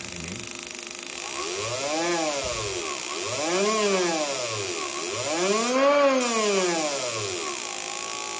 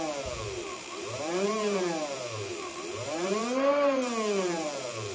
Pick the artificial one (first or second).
second